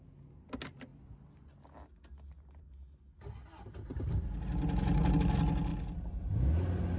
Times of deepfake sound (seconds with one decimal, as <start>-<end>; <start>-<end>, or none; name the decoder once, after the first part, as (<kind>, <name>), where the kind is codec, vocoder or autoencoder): 5.7-6.3 (vocoder, BigVGAN v2)